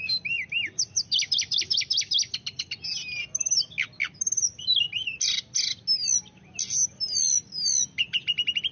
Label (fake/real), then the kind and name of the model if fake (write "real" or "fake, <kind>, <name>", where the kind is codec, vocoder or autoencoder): real